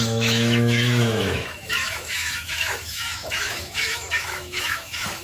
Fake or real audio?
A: fake